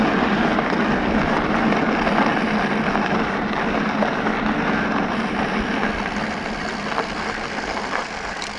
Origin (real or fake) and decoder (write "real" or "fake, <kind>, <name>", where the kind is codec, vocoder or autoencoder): real